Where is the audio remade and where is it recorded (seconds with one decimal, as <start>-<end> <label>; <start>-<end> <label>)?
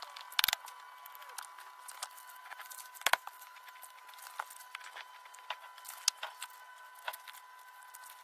0.0-2.4 recorded; 2.4-4.0 remade; 4.0-8.2 recorded